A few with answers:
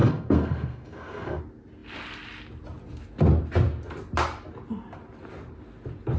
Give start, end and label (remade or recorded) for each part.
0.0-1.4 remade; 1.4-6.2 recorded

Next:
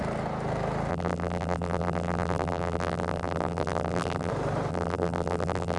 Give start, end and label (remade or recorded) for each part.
0.0-0.9 recorded; 0.9-4.3 remade; 4.3-4.7 recorded; 4.7-5.8 remade

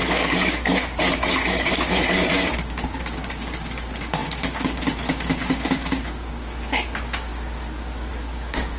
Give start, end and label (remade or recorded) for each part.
0.0-8.8 remade

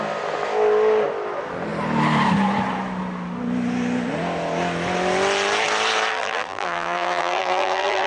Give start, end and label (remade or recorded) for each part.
0.0-6.1 recorded; 6.1-8.1 remade

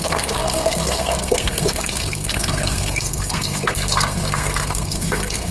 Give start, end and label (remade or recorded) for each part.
0.0-5.5 remade